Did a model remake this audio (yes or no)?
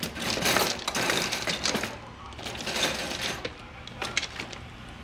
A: no